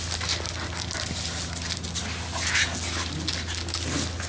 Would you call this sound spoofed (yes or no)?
no